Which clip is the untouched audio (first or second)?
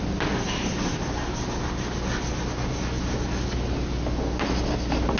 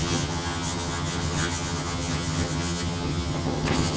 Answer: first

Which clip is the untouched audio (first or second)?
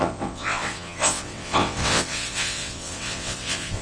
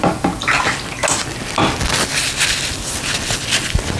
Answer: second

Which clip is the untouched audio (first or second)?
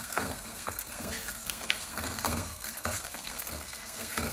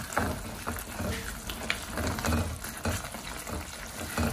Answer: second